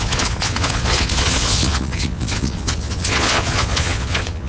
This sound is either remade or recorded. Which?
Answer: remade